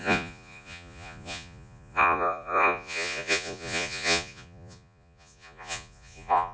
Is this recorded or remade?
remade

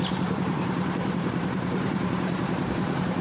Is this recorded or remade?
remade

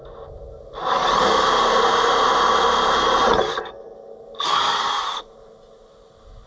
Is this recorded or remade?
recorded